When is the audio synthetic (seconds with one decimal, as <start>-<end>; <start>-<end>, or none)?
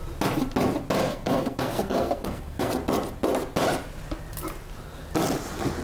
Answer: 1.0-2.7